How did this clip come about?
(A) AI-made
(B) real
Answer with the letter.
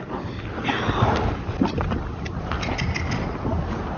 B